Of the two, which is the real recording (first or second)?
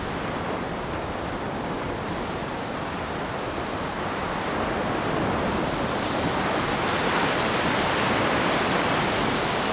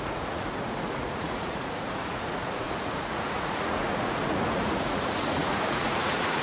first